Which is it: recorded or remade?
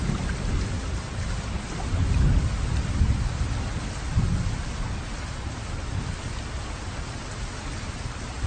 recorded